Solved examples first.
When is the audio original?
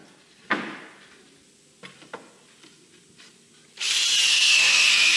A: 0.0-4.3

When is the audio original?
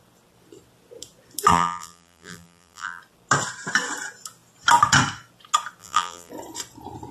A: 0.0-1.5; 3.0-5.8; 6.3-7.1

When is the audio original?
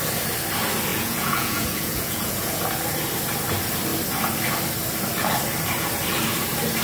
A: 0.0-0.9; 2.6-6.8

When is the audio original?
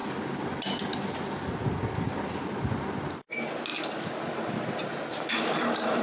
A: 0.6-3.7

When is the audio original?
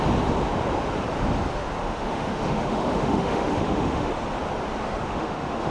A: 0.0-1.8; 4.1-5.0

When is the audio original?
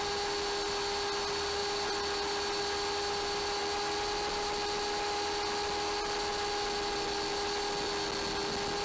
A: 0.0-8.8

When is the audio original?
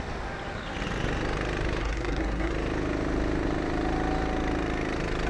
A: 0.0-1.8; 2.5-5.3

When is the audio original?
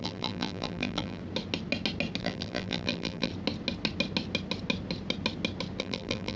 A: 1.2-2.2; 3.3-5.8